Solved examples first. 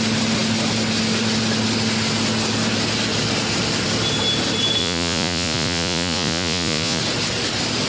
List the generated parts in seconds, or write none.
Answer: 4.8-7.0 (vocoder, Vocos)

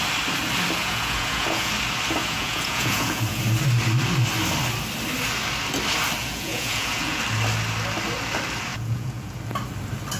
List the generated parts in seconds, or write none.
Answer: 0.8-1.7 (vocoder, Vocos); 2.2-3.4; 6.2-7.2; 8.7-9.4

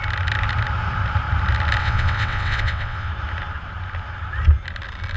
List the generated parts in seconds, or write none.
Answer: 1.8-3.1 (vocoder, WaveNeXt)